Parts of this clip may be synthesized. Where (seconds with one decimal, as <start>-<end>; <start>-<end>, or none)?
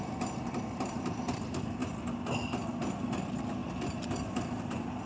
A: 0.0-1.8; 3.2-5.1